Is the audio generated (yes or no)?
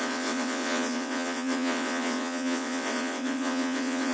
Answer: yes